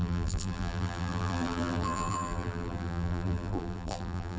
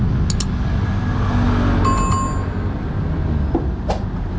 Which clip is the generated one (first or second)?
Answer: first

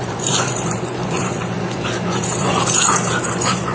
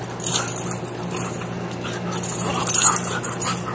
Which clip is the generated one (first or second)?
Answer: first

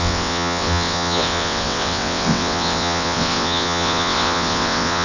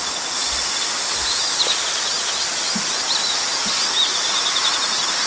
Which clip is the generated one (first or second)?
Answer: first